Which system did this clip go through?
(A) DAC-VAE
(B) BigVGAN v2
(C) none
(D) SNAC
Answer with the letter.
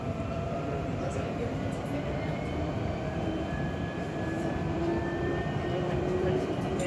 B